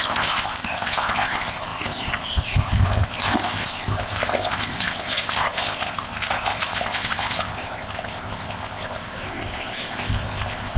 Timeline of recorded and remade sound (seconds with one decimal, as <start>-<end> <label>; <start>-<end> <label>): 0.0-10.8 remade

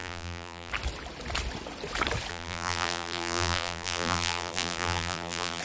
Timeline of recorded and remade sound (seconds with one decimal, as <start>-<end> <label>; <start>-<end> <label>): 0.0-0.7 remade; 0.7-2.3 recorded; 2.3-5.6 remade

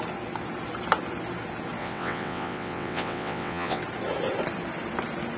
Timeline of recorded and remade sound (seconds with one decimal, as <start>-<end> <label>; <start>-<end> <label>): 0.0-1.8 recorded; 1.8-3.8 remade; 3.8-5.4 recorded

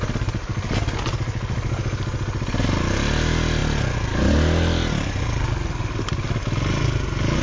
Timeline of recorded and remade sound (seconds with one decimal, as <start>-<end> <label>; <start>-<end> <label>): 0.0-7.4 recorded

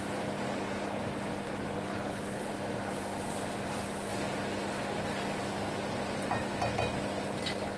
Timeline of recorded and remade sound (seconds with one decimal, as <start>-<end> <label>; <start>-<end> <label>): 0.0-1.9 recorded; 1.9-2.5 remade; 2.5-7.8 recorded

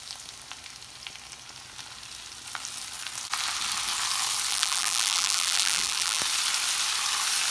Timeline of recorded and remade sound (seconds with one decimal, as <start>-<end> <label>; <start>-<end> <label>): 0.0-4.5 recorded; 4.5-6.2 remade; 6.2-7.5 recorded

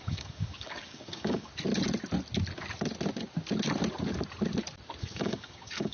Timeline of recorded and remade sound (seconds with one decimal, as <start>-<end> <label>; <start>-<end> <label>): 0.0-1.5 remade; 1.5-5.0 recorded; 5.0-5.9 remade